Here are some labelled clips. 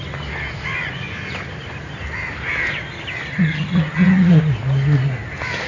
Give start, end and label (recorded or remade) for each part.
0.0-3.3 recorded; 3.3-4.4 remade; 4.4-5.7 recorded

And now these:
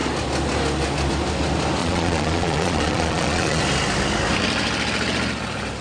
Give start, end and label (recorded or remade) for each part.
0.0-1.8 recorded; 1.8-3.6 remade; 3.6-5.8 recorded

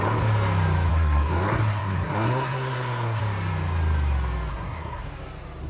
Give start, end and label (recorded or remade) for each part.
0.0-0.9 recorded; 0.9-3.2 remade; 3.2-4.5 recorded; 4.5-5.0 remade; 5.0-5.7 recorded

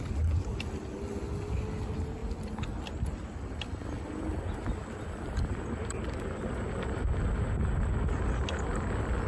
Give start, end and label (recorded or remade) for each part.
0.0-9.3 recorded